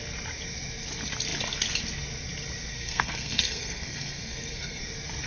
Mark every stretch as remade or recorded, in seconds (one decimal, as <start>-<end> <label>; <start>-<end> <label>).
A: 0.0-2.7 recorded; 2.7-4.8 remade; 4.8-5.3 recorded